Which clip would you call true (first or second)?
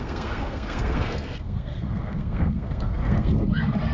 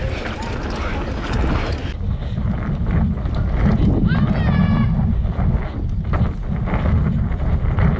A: second